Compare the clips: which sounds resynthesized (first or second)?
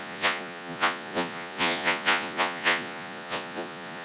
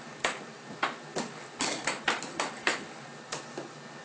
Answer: first